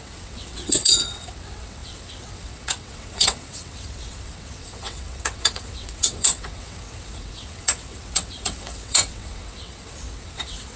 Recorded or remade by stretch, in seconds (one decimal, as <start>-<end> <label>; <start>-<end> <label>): 0.0-10.8 remade